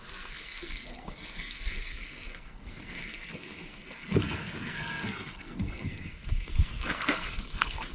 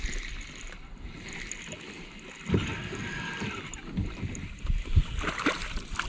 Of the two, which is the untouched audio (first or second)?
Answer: second